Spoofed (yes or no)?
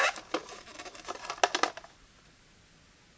no